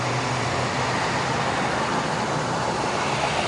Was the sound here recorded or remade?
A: recorded